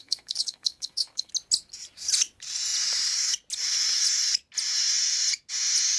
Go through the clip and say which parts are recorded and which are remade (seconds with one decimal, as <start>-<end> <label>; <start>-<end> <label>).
0.0-1.3 remade; 1.3-6.0 recorded